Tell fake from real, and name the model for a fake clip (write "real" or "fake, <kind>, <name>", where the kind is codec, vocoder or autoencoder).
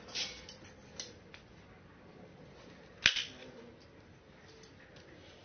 real